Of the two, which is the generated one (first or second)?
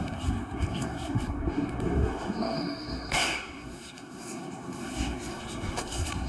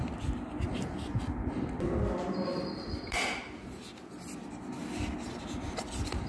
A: first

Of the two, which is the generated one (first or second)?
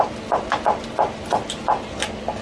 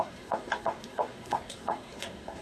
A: second